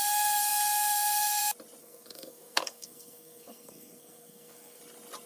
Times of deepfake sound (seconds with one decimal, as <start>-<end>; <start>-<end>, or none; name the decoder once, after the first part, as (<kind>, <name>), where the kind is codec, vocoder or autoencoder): 1.8-4.8 (codec, SNAC)